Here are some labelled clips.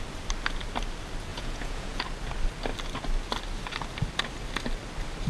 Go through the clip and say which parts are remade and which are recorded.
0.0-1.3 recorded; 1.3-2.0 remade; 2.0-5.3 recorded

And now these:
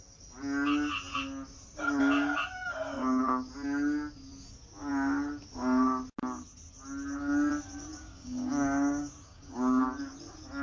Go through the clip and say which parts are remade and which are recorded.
0.0-7.9 recorded; 7.9-9.8 remade; 9.8-10.6 recorded